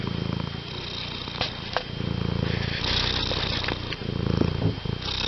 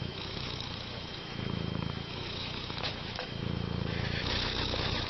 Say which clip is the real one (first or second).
first